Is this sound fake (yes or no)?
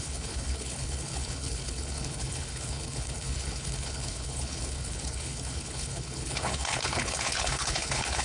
yes